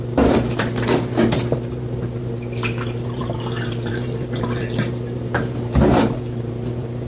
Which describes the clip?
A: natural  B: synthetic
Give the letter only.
B